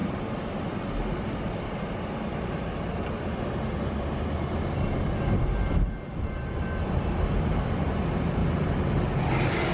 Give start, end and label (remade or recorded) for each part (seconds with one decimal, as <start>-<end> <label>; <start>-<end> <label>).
0.0-9.7 recorded